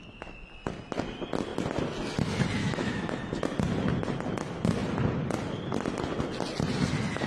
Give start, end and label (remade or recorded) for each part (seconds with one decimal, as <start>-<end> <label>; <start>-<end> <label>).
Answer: 0.0-2.6 recorded; 2.6-3.1 remade; 3.1-7.3 recorded